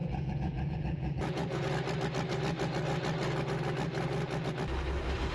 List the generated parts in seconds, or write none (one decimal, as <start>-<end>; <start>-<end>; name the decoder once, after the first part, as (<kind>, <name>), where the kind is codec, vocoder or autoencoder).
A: 0.0-1.7 (vocoder, Vocos)